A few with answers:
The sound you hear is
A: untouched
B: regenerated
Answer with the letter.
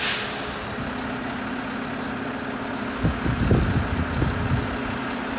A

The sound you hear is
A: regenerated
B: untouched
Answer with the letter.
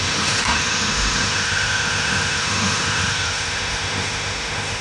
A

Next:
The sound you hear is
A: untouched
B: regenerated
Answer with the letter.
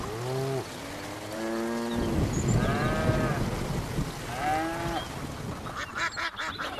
A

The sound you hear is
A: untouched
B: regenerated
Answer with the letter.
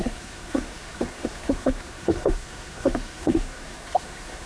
B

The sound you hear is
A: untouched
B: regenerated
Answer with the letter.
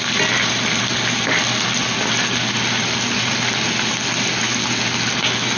A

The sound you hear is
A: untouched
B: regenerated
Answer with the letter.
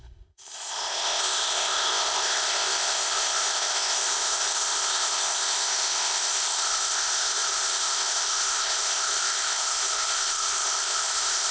B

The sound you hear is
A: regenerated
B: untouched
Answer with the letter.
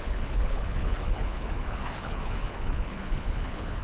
A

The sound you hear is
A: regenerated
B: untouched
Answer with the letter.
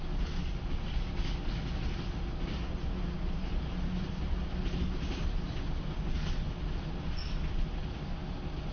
B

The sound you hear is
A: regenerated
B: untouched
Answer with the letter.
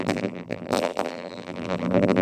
A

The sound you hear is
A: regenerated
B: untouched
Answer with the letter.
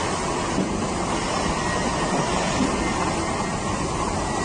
B